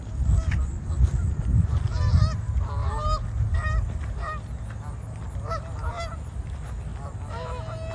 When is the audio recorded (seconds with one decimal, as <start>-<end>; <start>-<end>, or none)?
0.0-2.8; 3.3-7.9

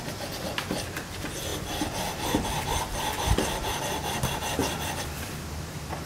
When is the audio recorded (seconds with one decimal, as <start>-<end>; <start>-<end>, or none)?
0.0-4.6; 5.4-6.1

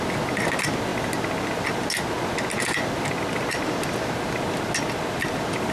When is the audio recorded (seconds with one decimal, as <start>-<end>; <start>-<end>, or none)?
0.0-5.7

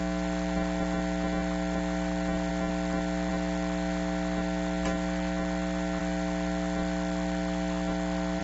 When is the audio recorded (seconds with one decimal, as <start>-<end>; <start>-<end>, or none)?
0.0-8.4